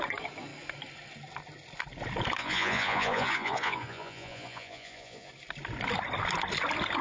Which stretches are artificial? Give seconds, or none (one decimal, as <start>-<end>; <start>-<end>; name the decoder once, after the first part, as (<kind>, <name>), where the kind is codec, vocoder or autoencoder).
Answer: 2.4-5.3 (vocoder, Vocos)